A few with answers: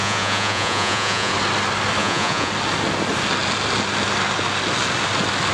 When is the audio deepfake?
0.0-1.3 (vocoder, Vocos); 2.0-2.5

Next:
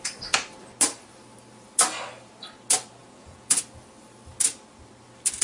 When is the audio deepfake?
3.0-3.6 (vocoder, Vocos)

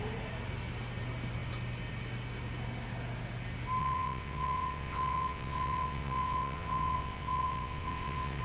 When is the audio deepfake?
3.8-8.4 (vocoder, WaveNeXt)

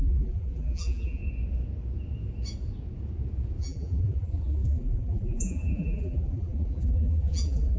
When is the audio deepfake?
0.0-1.2 (vocoder, BigVGAN v2); 3.6-7.8

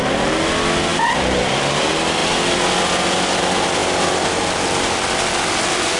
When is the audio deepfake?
none

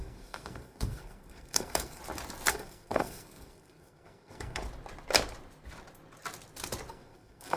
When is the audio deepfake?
0.0-2.0 (codec, SNAC); 2.5-4.6; 6.9-7.6